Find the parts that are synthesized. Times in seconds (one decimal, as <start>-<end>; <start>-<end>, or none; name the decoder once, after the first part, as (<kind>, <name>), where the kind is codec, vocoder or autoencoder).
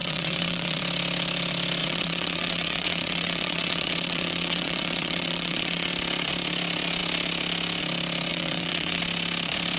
0.0-0.8 (vocoder, WaveNeXt); 1.8-5.9; 8.3-9.0